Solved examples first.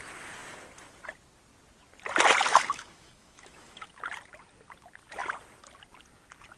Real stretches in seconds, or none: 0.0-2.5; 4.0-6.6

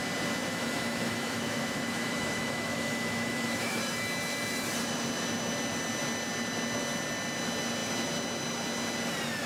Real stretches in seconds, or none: 0.0-0.5; 3.8-9.5

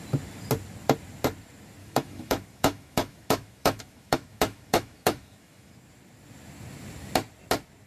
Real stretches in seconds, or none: 0.0-1.8; 5.7-7.9